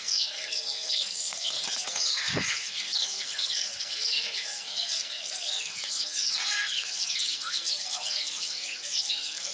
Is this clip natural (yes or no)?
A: no